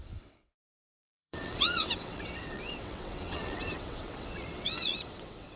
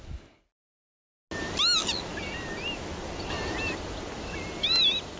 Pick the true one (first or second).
second